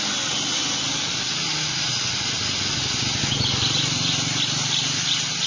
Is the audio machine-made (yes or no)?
no